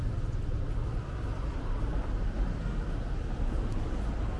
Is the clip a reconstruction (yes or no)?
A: no